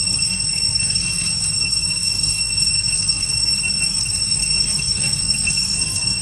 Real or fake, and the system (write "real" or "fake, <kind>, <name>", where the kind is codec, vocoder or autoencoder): fake, codec, SNAC